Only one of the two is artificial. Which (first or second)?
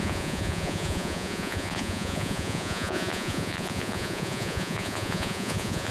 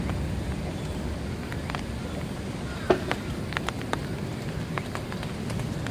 first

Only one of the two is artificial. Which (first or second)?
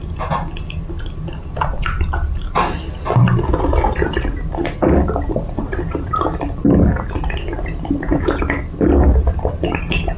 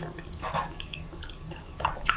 second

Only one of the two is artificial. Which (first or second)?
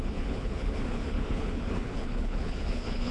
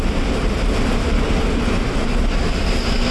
first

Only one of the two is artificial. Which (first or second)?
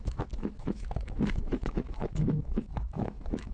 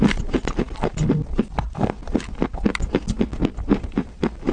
first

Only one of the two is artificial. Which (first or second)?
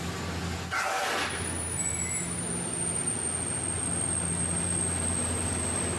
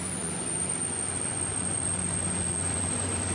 second